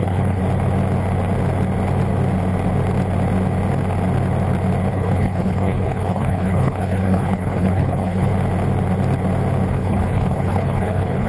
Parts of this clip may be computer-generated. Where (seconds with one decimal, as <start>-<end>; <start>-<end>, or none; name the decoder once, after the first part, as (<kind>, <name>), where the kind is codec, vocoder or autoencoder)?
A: 0.0-0.4 (codec, HILCodec); 4.9-8.3; 9.7-11.3